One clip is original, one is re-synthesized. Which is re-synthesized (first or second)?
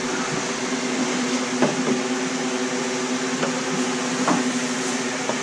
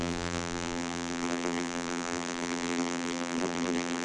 second